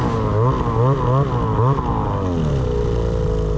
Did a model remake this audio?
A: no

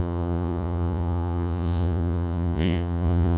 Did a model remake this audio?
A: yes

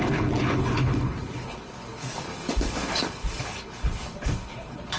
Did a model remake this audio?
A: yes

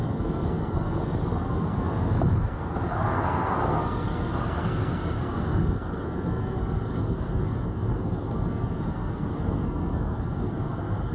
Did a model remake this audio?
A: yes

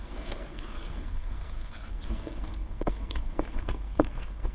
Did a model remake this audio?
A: yes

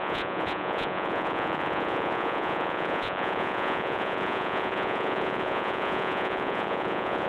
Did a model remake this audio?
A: yes